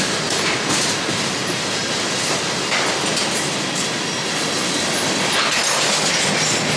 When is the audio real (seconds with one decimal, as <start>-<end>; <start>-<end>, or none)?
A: 0.0-6.8